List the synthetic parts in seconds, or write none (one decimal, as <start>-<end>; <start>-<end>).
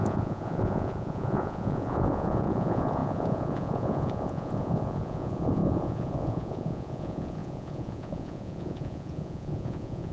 0.0-10.1